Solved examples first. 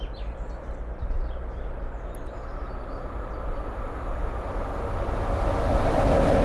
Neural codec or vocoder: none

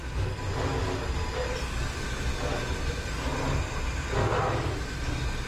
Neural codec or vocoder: none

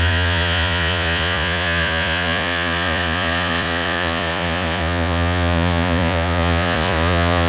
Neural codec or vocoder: vocoder, Vocos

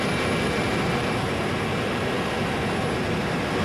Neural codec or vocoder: none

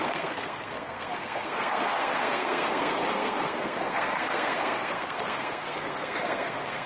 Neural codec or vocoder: codec, SNAC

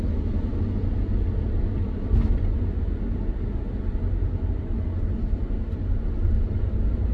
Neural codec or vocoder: none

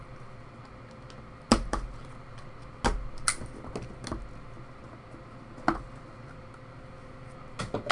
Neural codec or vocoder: none